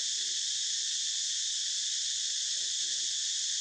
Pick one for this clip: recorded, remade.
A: recorded